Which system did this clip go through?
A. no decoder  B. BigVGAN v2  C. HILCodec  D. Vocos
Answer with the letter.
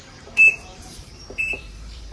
B